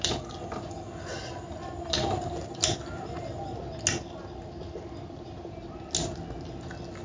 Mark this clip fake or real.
real